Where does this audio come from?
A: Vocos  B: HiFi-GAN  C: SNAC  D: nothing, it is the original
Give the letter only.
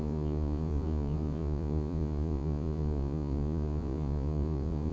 A